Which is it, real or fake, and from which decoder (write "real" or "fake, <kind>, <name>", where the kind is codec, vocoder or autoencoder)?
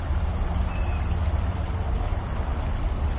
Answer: real